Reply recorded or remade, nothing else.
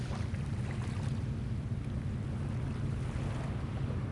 recorded